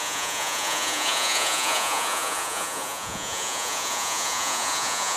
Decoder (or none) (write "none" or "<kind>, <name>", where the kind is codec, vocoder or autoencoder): vocoder, Vocos